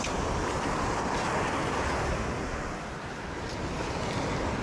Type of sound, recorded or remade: recorded